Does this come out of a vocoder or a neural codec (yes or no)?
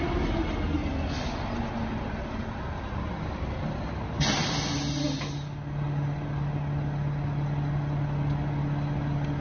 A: no